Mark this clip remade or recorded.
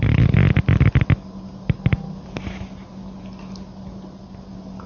recorded